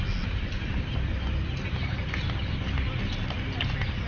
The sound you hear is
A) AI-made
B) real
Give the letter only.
B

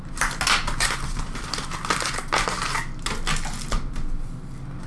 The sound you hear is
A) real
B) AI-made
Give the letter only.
A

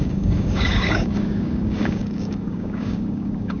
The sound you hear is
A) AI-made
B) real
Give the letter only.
A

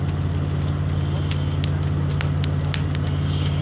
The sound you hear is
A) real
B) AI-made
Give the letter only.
A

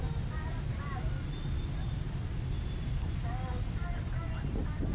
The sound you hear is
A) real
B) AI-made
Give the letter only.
A